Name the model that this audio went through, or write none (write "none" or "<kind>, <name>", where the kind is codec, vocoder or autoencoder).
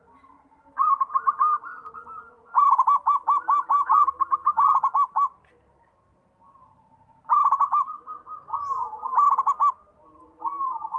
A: none